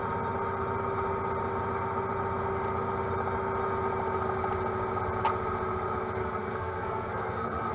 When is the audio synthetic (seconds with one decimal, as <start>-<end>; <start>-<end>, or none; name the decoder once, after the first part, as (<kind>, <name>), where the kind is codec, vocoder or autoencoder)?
6.2-7.7 (codec, SNAC)